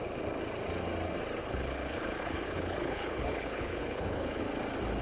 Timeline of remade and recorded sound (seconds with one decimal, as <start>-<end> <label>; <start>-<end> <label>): 0.0-1.4 recorded; 1.4-4.4 remade; 4.4-5.0 recorded